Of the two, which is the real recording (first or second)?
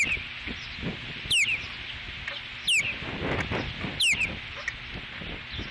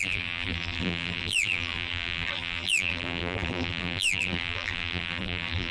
first